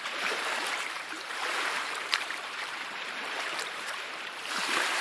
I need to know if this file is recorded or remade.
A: remade